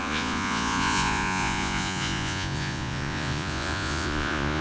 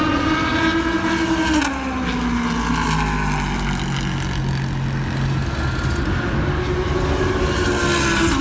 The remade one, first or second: first